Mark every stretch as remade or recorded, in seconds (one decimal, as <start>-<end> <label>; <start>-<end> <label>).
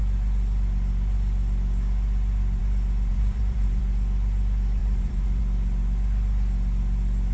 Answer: 0.0-3.1 recorded; 3.1-3.8 remade; 3.8-4.8 recorded; 4.8-5.4 remade; 5.4-7.3 recorded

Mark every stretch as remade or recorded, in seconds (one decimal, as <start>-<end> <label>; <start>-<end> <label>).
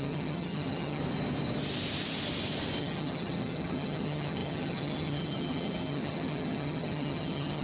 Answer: 0.0-1.0 remade; 1.0-2.8 recorded; 2.8-7.6 remade